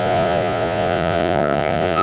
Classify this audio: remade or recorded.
remade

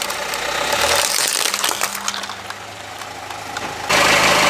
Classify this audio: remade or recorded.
recorded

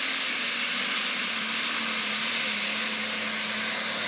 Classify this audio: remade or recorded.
recorded